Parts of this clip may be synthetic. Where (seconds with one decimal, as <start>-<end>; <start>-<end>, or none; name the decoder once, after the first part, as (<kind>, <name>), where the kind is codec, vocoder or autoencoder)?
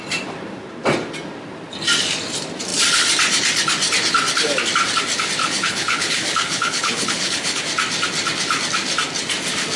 5.4-7.6 (codec, HILCodec)